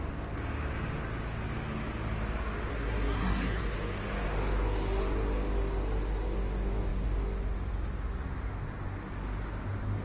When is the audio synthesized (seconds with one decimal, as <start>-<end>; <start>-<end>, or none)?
2.7-3.6